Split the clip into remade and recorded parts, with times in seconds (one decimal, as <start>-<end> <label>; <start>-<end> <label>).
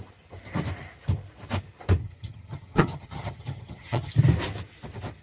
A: 0.0-2.0 recorded; 2.0-4.1 remade; 4.1-5.2 recorded